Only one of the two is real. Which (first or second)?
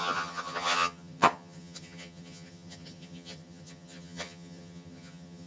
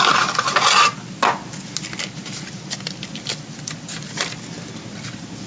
second